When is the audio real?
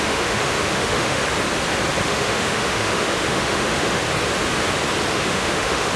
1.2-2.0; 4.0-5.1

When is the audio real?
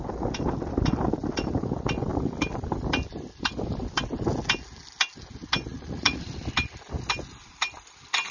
0.0-5.7; 6.2-8.3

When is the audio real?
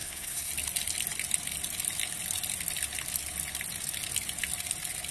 0.5-5.1